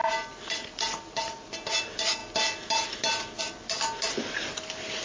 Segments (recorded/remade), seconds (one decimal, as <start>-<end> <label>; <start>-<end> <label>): 0.0-5.0 recorded